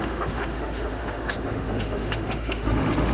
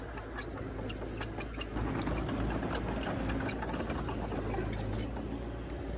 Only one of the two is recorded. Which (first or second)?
second